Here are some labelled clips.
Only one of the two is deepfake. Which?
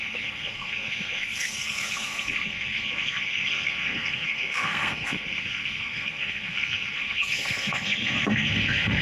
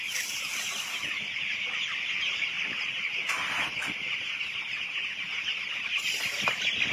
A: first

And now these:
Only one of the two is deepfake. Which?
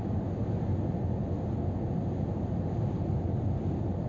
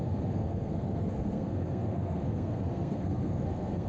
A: second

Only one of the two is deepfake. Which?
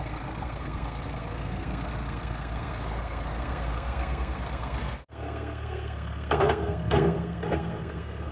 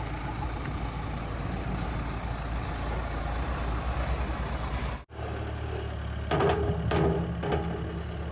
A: first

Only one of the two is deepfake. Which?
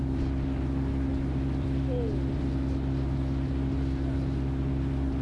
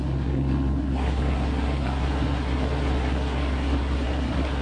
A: second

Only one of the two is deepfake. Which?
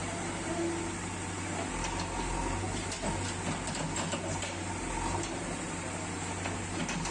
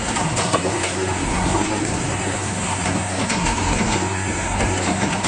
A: second